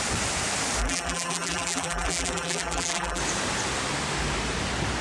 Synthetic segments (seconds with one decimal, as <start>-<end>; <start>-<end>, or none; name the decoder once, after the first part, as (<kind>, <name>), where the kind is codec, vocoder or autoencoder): 0.8-3.2 (vocoder, BigVGAN v2)